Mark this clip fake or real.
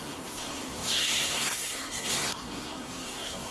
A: fake